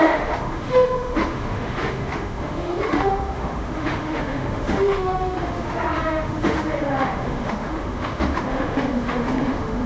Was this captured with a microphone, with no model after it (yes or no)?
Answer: no